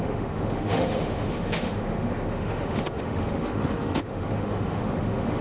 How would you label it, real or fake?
fake